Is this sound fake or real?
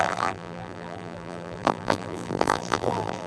fake